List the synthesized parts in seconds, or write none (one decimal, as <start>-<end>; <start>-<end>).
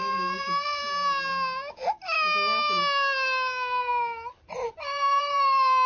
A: 0.0-0.8; 4.3-5.9